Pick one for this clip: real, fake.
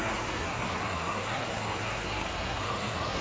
fake